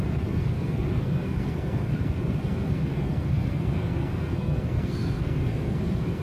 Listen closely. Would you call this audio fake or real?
fake